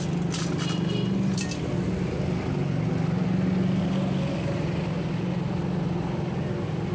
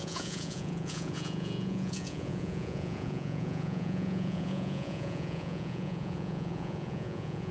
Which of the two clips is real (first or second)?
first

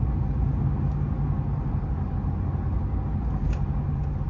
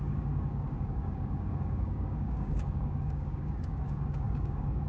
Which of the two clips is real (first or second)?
first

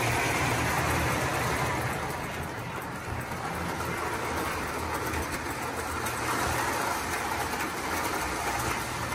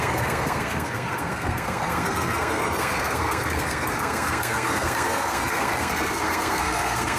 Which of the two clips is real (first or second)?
first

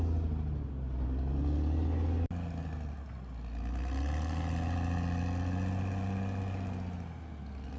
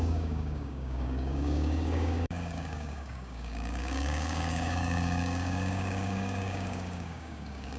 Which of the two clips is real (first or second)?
first